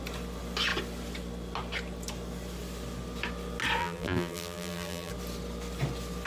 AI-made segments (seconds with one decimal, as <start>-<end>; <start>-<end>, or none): 3.8-5.1

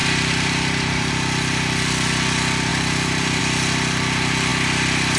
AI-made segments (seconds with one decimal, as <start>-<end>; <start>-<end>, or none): 0.0-1.1; 2.7-3.4

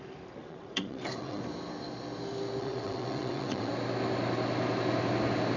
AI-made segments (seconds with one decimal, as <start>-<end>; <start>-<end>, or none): 0.4-1.4; 2.6-3.7

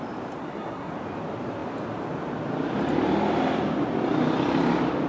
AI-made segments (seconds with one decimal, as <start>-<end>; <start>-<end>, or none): 0.4-0.9

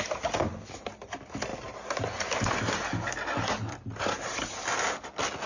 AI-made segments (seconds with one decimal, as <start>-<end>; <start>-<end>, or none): none

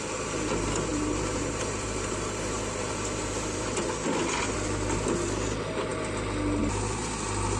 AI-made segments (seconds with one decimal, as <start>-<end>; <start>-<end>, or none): 0.9-3.9

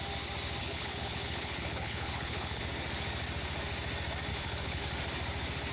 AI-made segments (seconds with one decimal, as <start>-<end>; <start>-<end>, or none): 0.6-2.6; 4.3-4.8

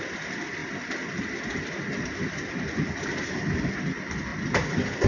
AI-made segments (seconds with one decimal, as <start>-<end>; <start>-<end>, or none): none